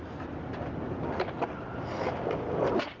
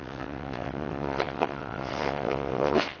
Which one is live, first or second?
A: first